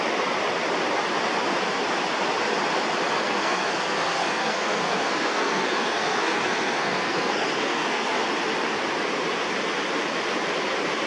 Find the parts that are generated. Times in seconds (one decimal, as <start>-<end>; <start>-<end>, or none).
3.1-8.2